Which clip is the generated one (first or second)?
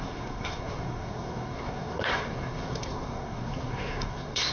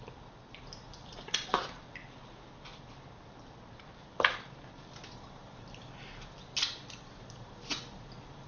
first